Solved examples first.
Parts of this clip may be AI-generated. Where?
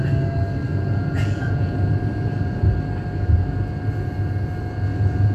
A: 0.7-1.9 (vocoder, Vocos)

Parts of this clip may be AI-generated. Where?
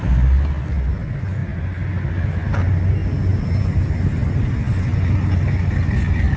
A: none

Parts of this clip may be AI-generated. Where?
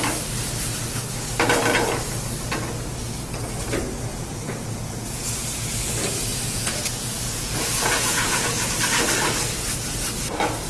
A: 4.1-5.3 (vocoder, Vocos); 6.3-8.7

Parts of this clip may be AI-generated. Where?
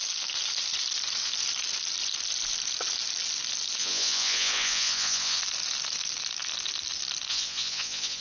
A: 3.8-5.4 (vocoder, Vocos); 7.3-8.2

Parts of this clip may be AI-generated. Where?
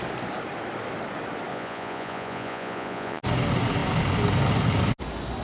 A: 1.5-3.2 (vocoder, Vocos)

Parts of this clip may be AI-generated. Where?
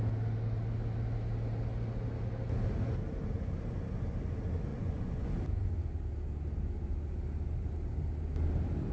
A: 4.7-5.3 (vocoder, Vocos)